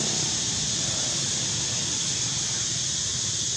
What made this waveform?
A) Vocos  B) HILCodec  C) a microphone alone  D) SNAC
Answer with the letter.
C